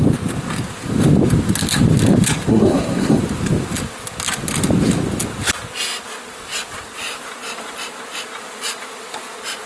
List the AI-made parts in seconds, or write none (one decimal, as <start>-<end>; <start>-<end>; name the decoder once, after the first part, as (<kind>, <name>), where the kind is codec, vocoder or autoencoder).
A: 2.5-3.2 (codec, SNAC)